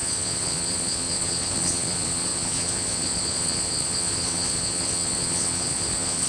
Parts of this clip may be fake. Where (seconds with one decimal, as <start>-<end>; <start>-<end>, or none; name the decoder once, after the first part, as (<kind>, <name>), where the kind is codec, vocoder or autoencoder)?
0.0-6.3 (vocoder, Vocos)